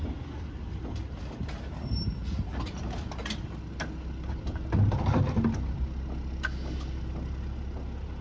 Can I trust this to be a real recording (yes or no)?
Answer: yes